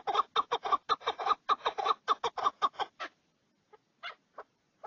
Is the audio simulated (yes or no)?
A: no